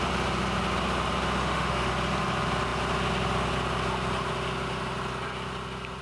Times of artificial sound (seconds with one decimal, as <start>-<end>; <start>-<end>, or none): 1.4-1.9